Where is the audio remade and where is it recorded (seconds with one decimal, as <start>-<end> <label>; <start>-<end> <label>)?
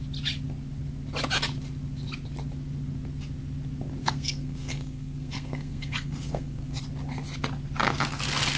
0.0-4.0 recorded; 4.0-6.8 remade; 6.8-8.6 recorded